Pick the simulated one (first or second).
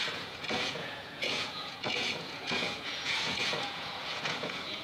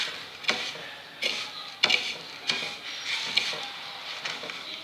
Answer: first